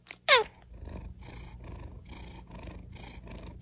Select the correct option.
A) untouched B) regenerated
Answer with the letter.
A